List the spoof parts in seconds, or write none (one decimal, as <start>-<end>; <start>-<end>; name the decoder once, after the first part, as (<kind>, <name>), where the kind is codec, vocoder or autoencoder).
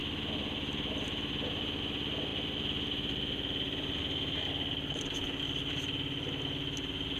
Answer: none